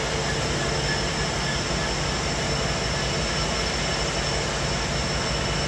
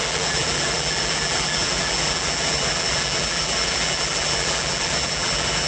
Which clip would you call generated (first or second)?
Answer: second